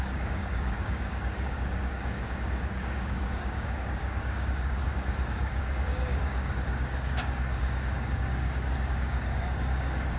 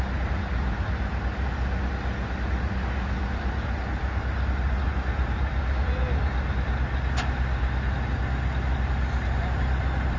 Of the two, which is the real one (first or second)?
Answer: second